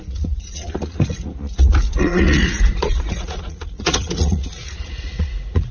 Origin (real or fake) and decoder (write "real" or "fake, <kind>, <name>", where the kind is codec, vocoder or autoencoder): fake, vocoder, Vocos